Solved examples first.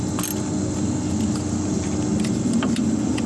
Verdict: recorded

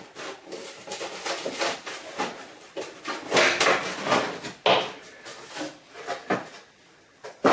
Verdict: recorded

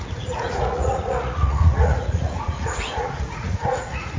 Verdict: remade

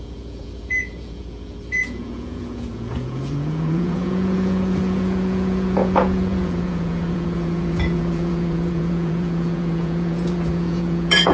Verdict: remade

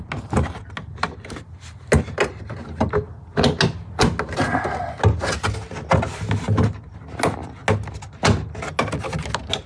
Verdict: recorded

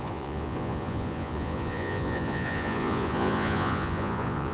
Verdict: remade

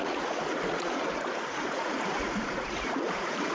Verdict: remade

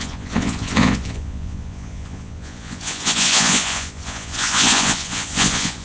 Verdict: remade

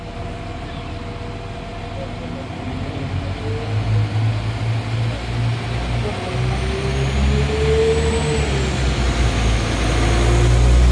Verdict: recorded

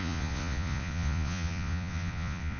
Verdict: remade